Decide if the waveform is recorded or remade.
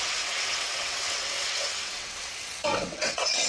remade